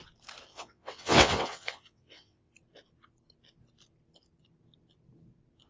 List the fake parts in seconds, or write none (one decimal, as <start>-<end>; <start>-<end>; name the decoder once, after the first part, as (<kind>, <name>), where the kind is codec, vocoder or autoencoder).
0.5-2.5 (vocoder, WaveNeXt)